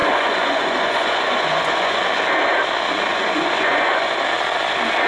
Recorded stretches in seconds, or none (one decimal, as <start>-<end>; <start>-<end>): 2.0-3.1; 4.2-5.1